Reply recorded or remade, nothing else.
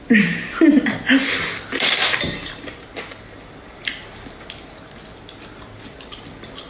recorded